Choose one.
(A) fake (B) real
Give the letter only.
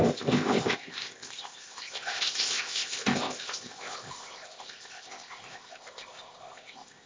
A